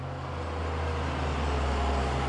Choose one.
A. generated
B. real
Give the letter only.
B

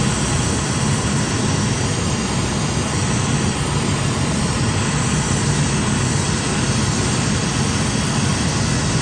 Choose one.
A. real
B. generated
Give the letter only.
A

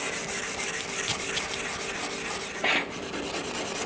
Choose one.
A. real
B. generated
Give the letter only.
A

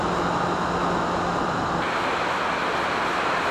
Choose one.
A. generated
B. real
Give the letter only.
B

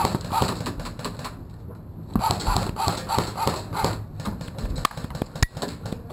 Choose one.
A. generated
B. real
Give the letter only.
B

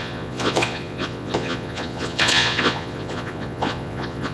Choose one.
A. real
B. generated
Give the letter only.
B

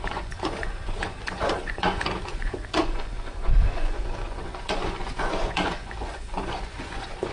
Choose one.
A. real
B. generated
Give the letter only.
B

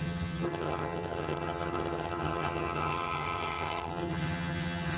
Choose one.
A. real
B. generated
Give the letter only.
B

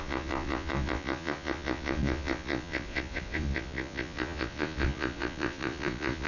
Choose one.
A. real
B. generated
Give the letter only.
B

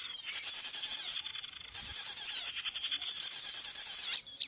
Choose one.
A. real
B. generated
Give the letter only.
A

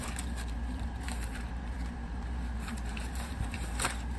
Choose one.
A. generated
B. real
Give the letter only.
A